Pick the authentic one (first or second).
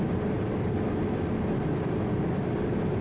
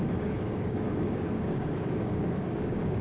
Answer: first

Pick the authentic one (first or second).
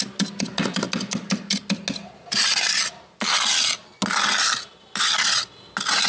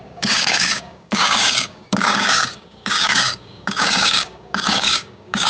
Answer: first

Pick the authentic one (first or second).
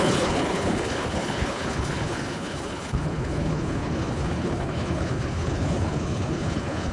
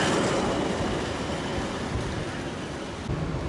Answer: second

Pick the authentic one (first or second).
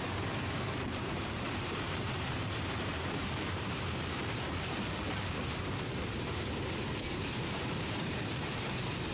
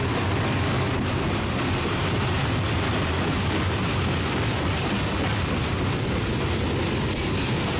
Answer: second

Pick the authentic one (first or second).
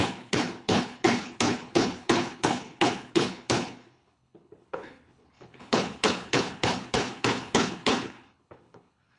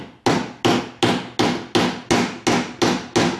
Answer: second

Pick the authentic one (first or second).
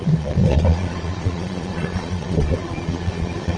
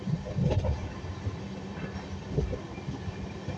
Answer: second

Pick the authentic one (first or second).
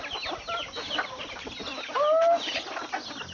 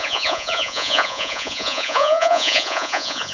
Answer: first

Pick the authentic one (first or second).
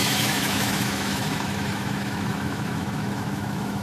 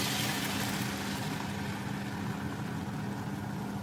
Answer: second